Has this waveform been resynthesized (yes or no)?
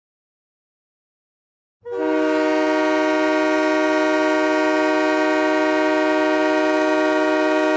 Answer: no